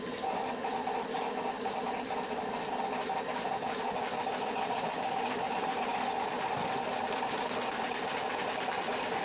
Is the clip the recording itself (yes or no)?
yes